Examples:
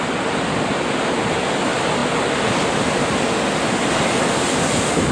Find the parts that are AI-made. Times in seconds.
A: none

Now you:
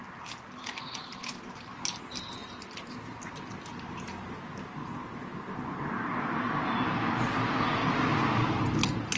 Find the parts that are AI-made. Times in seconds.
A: none

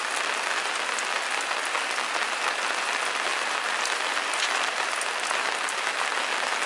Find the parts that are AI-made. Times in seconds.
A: none

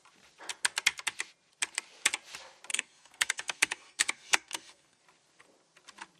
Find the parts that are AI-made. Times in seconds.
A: 2.7-5.0

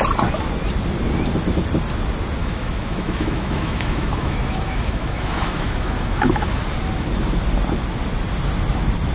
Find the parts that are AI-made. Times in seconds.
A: 2.4-6.6

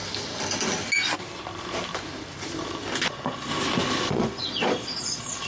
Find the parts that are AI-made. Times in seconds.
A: 3.1-3.5; 4.1-5.5